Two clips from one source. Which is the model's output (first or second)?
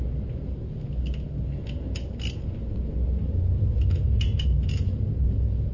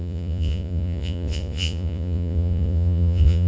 second